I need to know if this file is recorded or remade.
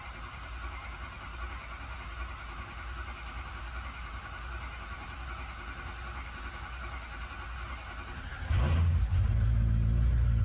recorded